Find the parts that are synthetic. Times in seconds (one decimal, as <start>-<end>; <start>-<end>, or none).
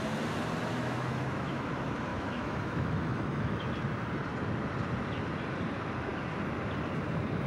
0.7-1.7; 2.1-3.6